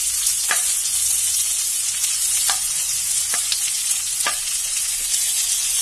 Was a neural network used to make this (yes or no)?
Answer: yes